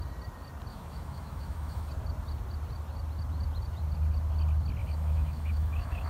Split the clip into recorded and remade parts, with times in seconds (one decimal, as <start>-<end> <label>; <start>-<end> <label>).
0.0-0.7 recorded; 0.7-1.9 remade; 1.9-4.8 recorded; 4.8-6.1 remade